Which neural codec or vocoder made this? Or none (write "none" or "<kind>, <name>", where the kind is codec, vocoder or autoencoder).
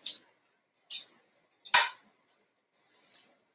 none